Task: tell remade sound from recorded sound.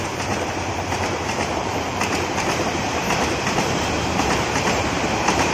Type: remade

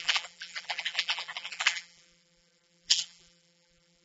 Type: remade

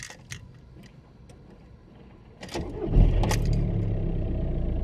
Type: recorded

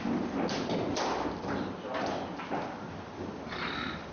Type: recorded